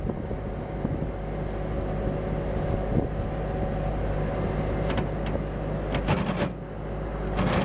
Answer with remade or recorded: recorded